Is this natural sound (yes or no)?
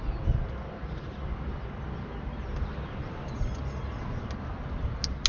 yes